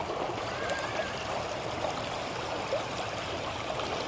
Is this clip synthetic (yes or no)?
no